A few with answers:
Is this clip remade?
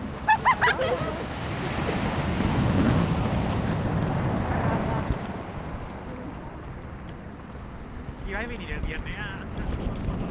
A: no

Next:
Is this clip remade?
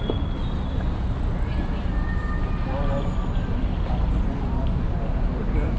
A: no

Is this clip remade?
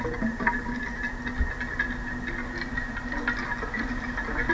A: no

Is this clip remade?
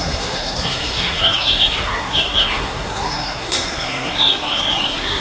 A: yes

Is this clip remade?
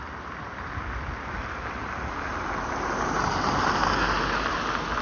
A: no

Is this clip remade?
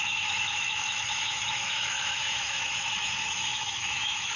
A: yes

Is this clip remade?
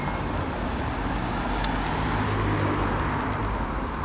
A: no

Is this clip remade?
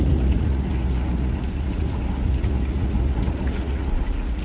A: yes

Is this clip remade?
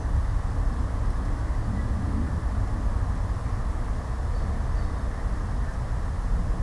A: no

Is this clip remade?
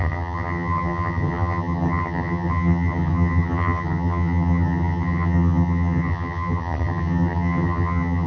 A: yes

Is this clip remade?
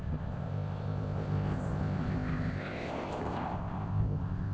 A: yes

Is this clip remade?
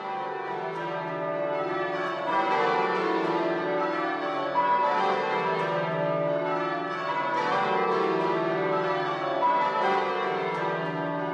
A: no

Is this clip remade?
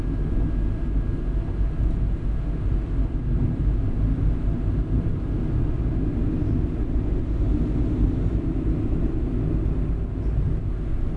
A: no